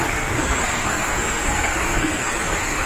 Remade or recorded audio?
remade